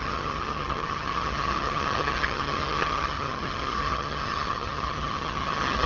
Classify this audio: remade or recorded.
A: remade